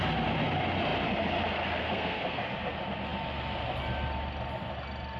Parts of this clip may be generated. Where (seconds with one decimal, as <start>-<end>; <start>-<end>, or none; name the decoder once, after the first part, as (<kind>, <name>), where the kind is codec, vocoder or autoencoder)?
1.8-2.4 (codec, SNAC)